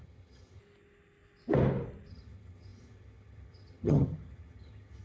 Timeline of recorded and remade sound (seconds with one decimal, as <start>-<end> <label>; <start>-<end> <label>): 0.0-0.6 remade; 0.6-2.1 recorded; 2.1-5.0 remade